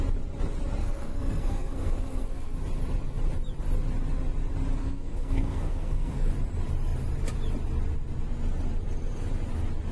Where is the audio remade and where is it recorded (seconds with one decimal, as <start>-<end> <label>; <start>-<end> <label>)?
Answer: 0.0-0.8 recorded; 0.8-2.5 remade; 2.5-4.8 recorded; 4.8-6.3 remade; 6.3-9.9 recorded